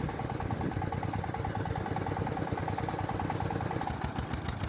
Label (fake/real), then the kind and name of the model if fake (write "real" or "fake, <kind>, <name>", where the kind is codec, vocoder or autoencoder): real